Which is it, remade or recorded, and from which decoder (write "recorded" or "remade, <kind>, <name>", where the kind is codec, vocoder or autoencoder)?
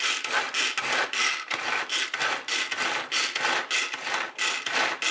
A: recorded